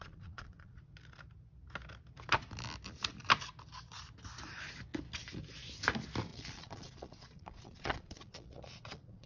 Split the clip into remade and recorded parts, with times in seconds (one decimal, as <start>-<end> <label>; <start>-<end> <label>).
0.0-0.8 remade; 0.8-6.3 recorded; 6.3-9.3 remade